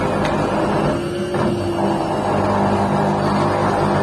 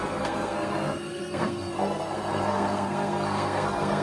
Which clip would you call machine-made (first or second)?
second